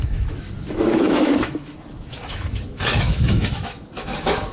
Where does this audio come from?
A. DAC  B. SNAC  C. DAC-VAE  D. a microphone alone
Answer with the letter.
C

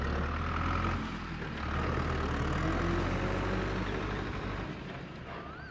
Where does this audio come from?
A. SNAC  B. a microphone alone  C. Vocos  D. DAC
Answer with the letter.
B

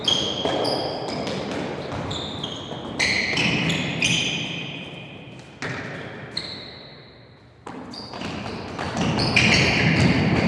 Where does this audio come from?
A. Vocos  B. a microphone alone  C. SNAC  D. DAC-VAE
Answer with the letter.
B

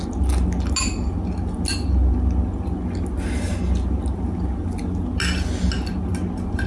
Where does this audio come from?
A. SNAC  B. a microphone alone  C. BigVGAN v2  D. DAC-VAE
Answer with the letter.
B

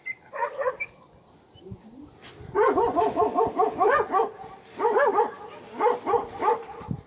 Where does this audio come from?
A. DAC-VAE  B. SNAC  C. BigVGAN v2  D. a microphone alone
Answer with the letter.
D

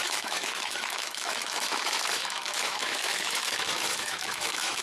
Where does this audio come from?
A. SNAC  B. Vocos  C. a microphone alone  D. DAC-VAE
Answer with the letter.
D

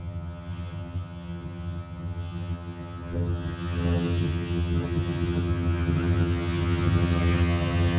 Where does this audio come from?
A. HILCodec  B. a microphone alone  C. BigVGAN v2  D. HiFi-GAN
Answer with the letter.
D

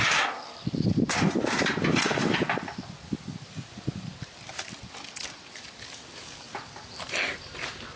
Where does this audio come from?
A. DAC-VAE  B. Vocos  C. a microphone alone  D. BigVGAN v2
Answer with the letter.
C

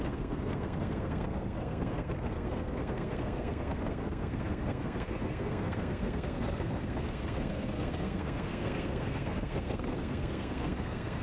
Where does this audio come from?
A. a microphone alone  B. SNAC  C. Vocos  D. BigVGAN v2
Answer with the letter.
B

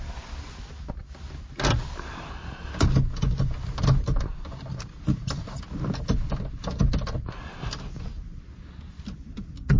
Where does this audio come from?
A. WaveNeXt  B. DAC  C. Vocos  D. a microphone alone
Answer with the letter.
D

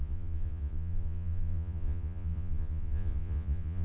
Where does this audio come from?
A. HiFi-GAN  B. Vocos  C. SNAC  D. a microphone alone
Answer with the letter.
B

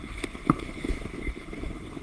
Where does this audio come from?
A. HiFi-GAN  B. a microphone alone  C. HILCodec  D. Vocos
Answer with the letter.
C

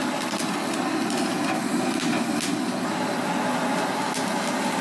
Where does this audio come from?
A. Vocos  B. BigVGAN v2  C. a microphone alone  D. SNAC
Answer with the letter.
C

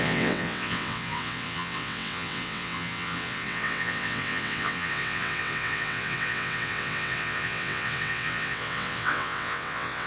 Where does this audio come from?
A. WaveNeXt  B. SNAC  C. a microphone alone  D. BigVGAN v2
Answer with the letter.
A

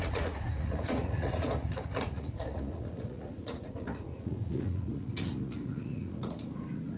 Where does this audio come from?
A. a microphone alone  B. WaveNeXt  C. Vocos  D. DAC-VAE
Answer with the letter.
C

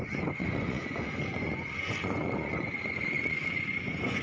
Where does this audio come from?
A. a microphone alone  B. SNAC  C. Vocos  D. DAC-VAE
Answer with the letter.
C